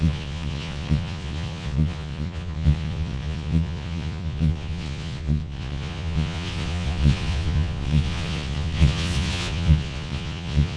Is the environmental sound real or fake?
fake